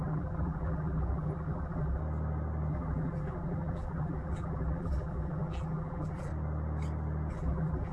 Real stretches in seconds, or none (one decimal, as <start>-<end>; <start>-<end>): 2.0-2.7; 6.3-7.3